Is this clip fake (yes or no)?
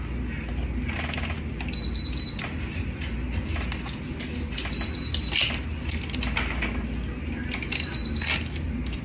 no